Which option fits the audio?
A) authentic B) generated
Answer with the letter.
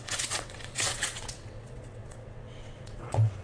B